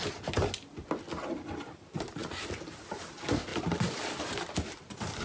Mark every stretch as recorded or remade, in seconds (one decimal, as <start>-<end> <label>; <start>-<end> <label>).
0.0-5.2 recorded